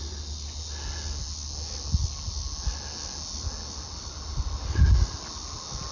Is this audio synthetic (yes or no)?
no